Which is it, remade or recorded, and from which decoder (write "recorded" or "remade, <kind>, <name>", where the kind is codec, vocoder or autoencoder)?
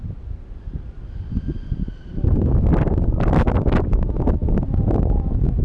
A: recorded